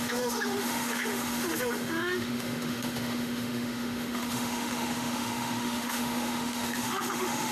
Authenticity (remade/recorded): remade